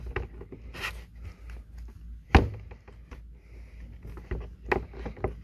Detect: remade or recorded recorded